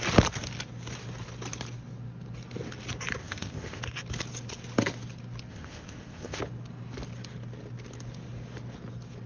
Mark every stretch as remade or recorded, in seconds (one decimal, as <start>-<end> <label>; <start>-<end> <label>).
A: 0.0-3.2 recorded; 3.2-3.8 remade; 3.8-5.5 recorded; 5.5-6.4 remade; 6.4-9.3 recorded